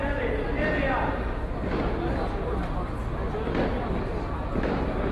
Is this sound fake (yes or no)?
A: no